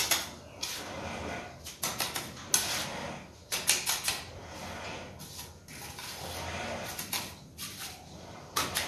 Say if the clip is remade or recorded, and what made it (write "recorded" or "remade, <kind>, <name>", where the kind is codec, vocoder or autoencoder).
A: recorded